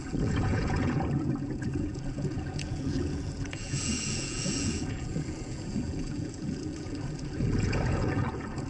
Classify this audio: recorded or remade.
remade